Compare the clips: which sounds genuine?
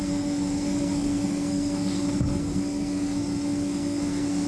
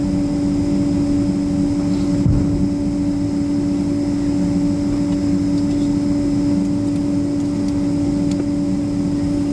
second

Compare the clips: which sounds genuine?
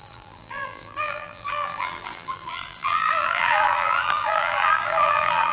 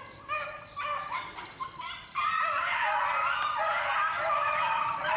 second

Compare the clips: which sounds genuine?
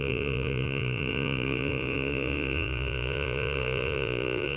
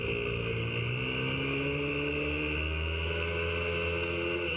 second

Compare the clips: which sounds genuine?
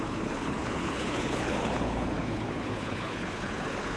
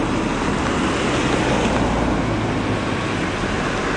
second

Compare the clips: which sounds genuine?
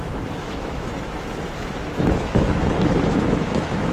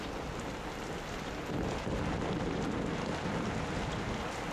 second